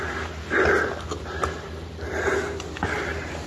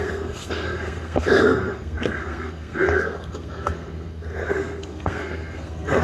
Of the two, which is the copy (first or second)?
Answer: second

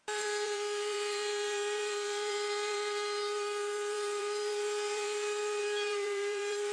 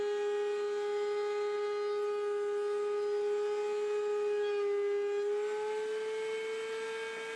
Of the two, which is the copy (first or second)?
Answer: first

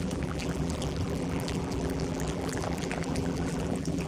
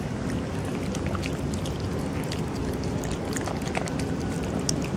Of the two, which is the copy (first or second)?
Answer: first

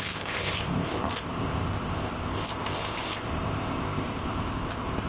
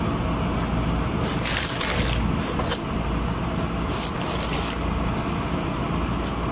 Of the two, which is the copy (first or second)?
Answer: first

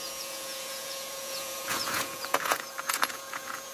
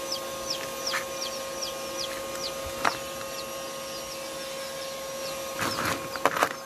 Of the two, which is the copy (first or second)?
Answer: first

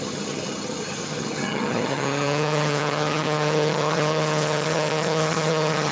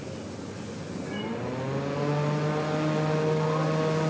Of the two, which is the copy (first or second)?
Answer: first